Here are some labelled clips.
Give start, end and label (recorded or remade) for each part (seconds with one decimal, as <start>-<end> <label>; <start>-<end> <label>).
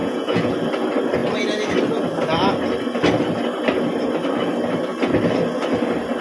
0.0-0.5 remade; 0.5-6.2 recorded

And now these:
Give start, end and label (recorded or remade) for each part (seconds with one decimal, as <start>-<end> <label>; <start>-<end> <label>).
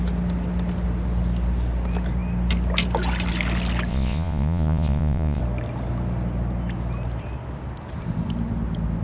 0.0-3.9 recorded; 3.9-5.4 remade; 5.4-9.0 recorded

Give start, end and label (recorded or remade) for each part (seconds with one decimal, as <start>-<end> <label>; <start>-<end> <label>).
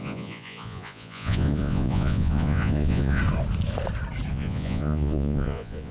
0.0-3.2 remade; 3.2-4.3 recorded; 4.3-5.9 remade